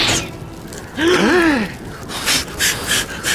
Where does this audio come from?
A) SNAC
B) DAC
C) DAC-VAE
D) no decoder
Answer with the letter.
D